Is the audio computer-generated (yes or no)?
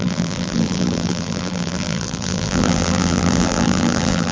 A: yes